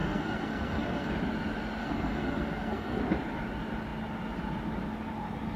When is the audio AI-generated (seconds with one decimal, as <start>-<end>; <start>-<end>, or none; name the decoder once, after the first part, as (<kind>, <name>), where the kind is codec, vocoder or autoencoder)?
0.0-1.1 (codec, SNAC); 1.8-3.0